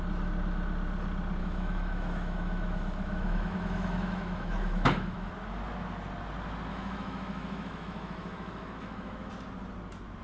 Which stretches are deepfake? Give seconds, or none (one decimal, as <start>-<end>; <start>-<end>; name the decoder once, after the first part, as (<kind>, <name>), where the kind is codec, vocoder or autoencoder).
1.4-5.3 (autoencoder, DAC-VAE); 6.7-9.3